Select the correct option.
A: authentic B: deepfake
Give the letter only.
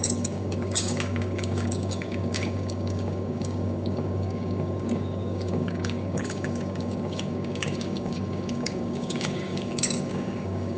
B